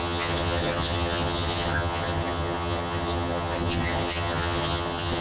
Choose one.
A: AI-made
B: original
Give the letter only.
A